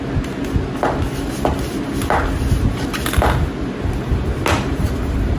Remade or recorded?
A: recorded